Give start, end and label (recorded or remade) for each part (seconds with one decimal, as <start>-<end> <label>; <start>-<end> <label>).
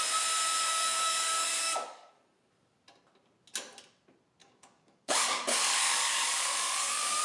0.0-0.6 recorded; 0.6-2.1 remade; 2.1-4.4 recorded; 4.4-7.2 remade